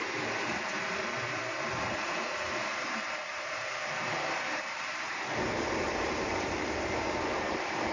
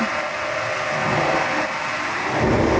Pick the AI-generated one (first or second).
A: first